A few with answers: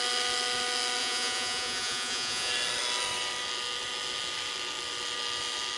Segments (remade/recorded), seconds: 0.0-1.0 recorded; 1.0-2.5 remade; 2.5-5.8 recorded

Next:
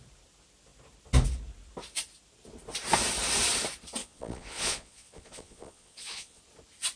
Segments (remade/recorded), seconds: 0.0-4.0 recorded; 4.0-6.4 remade; 6.4-7.0 recorded